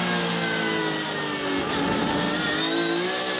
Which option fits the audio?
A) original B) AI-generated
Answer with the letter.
A